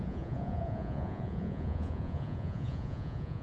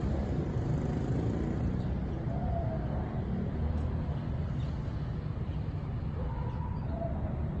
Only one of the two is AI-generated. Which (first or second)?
first